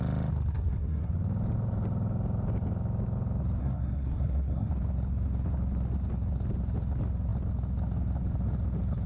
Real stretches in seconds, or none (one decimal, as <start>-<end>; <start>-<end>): 0.0-0.5; 1.1-3.6; 4.7-9.1

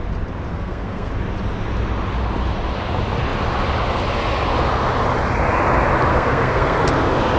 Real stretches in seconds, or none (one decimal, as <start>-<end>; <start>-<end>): 0.0-0.5; 1.1-6.1; 6.8-7.4

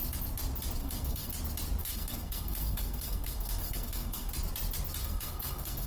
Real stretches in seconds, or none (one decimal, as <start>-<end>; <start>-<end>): 0.0-0.8; 1.3-1.8; 4.3-5.0

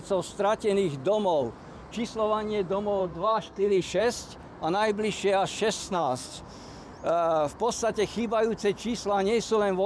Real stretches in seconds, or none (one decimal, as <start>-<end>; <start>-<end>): 0.0-3.0; 4.0-5.8; 6.5-9.9

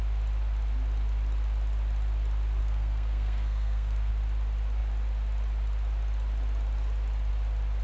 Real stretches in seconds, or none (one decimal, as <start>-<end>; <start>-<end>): 0.0-2.6; 4.1-7.8

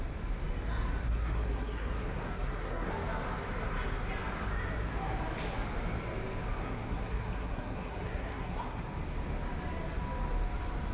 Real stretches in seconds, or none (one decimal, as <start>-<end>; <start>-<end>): 0.0-1.0; 2.9-6.6; 8.8-10.9

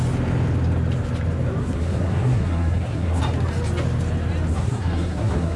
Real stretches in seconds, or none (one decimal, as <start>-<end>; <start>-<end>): 0.0-1.6; 3.2-4.5

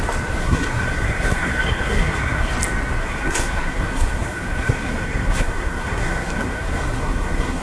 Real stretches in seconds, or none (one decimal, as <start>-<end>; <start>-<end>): 0.0-0.4; 2.5-3.0